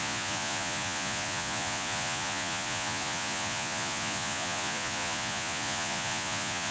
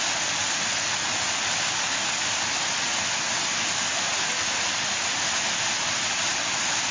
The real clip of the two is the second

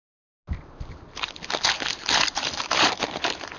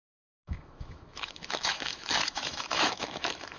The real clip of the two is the first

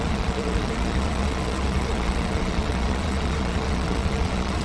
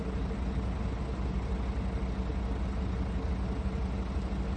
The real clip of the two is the second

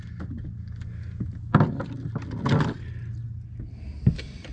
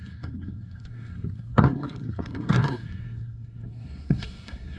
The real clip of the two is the first